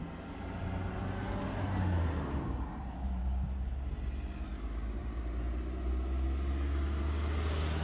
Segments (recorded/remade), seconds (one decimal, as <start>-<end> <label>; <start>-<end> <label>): 0.0-7.8 recorded